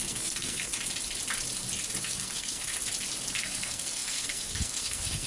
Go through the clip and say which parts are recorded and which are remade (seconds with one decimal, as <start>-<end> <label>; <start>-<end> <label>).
0.0-0.7 remade; 0.7-2.0 recorded; 2.0-2.7 remade; 2.7-3.3 recorded; 3.3-5.3 remade